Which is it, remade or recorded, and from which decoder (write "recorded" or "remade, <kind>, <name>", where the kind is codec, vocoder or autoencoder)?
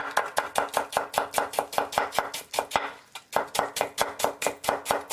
recorded